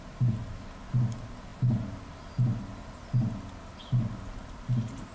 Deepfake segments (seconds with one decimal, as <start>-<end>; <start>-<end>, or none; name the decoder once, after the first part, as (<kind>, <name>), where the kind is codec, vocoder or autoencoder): none